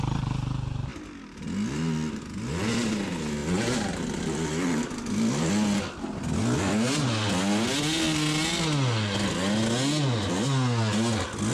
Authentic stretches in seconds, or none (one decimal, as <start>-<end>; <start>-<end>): 0.0-11.5